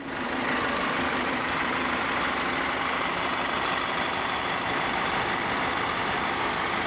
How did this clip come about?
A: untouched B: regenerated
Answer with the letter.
B